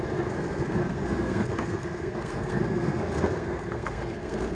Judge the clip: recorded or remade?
remade